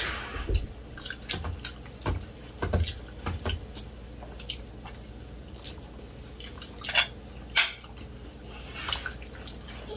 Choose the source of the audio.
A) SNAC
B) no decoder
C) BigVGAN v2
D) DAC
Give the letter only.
B